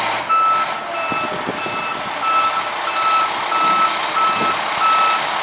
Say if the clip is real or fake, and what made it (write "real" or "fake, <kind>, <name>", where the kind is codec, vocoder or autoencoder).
real